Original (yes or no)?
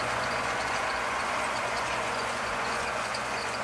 no